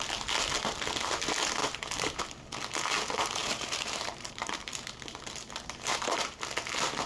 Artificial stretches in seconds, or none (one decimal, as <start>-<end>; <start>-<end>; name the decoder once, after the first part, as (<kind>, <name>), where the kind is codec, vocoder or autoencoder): 1.6-2.2 (vocoder, BigVGAN v2); 3.4-5.2; 5.9-6.4

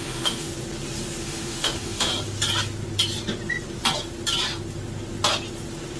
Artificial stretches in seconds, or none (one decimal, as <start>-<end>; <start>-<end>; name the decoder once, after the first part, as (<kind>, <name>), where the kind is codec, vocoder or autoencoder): 0.0-0.5 (autoencoder, DAC-VAE); 1.2-2.1

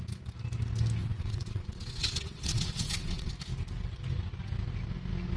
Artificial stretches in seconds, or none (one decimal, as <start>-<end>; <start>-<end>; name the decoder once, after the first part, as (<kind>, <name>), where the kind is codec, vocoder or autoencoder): 1.0-3.3 (vocoder, WaveNeXt)

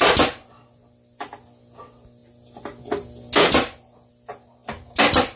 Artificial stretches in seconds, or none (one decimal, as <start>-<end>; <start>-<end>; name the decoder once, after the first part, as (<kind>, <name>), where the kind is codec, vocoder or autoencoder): none

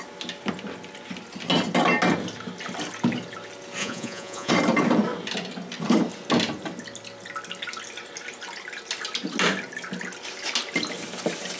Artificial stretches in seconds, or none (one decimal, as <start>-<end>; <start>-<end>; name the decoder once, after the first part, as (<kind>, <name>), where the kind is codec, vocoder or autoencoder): 3.8-4.5 (vocoder, Vocos)

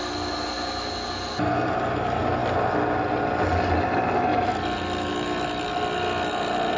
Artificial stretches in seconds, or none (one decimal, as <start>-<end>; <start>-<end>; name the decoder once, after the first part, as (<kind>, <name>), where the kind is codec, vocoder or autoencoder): none

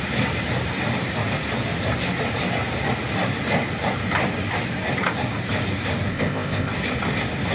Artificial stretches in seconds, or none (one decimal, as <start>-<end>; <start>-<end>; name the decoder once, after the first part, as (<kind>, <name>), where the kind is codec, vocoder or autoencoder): 6.1-6.7 (codec, ZipCodec)